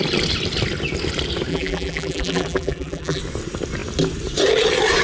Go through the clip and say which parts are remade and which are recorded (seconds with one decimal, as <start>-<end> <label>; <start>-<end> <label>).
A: 0.0-1.5 recorded; 1.5-3.2 remade; 3.2-5.0 recorded